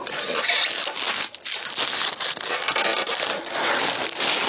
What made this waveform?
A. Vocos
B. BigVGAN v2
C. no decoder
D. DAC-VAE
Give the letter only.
C